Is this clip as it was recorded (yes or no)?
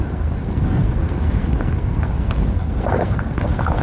no